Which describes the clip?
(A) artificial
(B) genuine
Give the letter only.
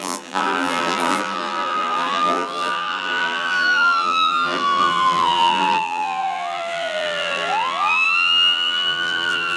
A